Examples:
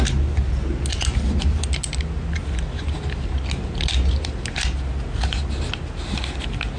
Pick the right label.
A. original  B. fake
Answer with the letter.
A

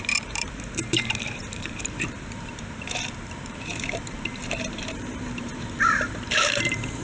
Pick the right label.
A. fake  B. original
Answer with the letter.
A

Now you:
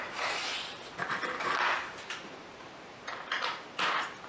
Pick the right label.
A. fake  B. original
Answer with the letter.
A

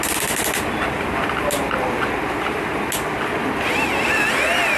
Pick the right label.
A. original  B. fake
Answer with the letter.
A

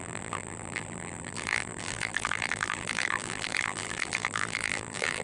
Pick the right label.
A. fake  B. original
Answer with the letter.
A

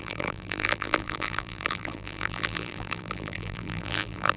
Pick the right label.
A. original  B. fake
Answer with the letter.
B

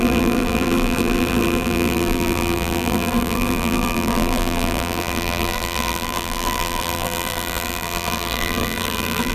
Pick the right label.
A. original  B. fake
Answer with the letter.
B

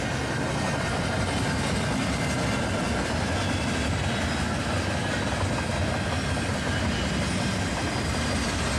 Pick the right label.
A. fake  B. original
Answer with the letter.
B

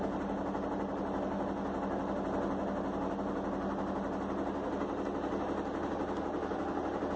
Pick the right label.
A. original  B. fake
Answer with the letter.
A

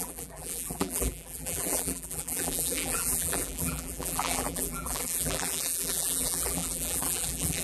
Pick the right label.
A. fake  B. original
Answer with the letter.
A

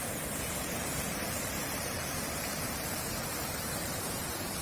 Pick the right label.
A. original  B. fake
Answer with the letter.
B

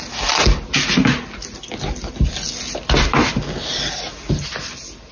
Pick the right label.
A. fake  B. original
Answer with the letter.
B